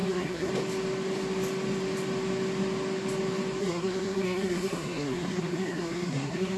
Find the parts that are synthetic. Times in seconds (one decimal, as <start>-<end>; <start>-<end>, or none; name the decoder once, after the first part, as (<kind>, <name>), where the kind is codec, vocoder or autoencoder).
0.0-0.5 (codec, SNAC); 3.6-6.6